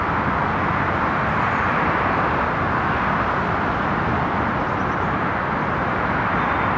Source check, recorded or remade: recorded